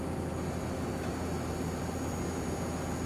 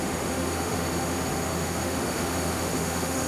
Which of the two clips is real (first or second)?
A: first